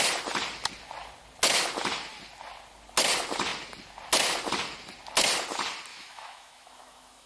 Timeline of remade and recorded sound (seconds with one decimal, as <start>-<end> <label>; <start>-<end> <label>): 0.0-5.9 recorded; 5.9-7.3 remade